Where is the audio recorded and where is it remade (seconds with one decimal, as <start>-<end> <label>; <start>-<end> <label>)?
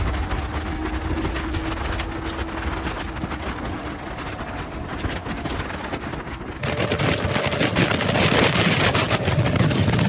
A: 0.0-10.1 recorded